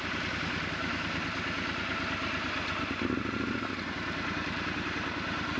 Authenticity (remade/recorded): recorded